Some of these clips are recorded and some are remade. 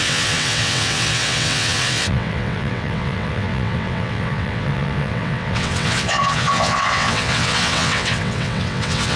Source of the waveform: remade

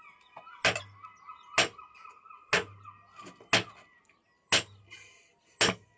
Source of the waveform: recorded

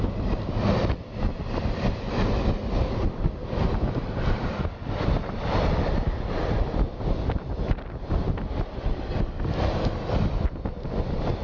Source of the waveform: recorded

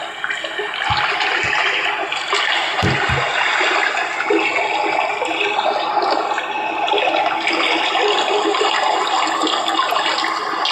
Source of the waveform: recorded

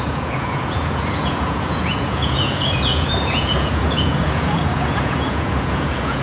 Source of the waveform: remade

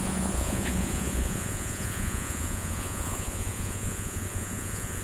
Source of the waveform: remade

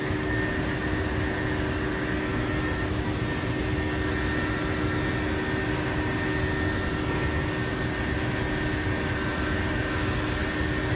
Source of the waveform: recorded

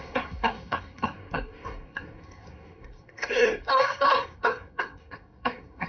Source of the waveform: remade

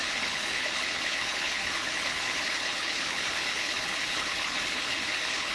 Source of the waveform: remade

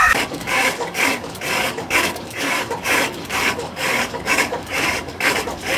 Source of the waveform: remade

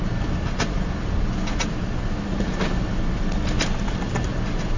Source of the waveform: recorded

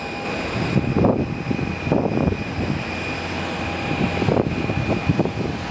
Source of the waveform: recorded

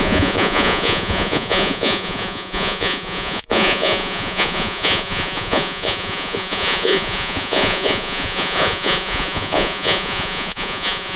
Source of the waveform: remade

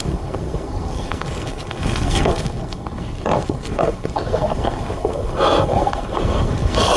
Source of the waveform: remade